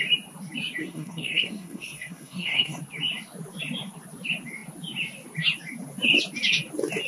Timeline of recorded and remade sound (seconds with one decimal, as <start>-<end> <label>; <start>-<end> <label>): 0.0-0.8 recorded; 0.8-2.8 remade; 2.8-7.1 recorded